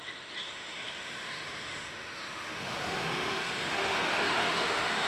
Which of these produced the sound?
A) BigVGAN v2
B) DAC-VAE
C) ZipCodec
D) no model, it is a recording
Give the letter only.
B